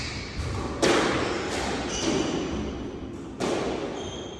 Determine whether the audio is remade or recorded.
recorded